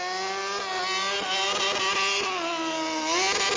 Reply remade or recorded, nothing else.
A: recorded